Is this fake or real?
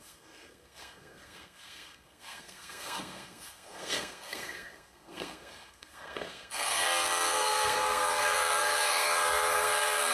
fake